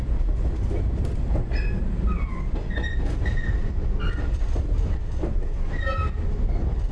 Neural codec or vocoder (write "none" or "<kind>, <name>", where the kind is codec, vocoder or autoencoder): none